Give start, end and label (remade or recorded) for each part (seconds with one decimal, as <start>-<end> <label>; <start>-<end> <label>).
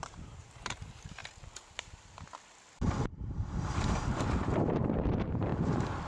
0.0-1.2 remade; 1.2-3.2 recorded; 3.2-5.5 remade; 5.5-6.1 recorded